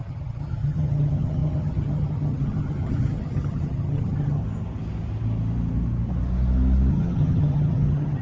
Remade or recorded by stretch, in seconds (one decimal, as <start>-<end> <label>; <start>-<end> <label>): 0.0-4.4 remade; 4.4-6.9 recorded; 6.9-8.2 remade